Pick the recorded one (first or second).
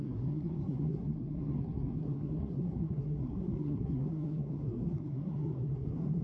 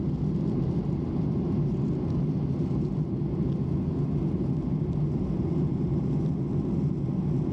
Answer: second